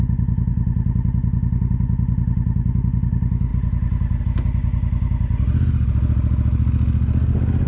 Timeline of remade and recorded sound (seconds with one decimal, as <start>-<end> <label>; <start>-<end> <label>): 0.0-7.7 recorded